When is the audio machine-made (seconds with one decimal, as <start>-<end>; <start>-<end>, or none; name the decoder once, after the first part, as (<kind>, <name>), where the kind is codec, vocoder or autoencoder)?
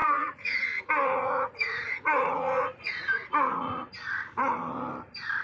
0.0-0.6 (vocoder, Vocos); 1.2-3.9